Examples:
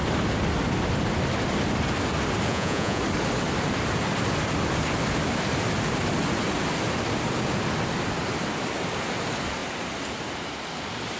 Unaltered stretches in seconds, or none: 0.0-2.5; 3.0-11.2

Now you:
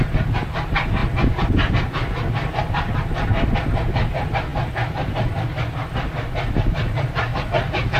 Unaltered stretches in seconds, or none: 0.0-8.0